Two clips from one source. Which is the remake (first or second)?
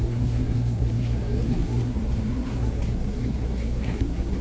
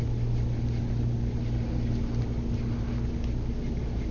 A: first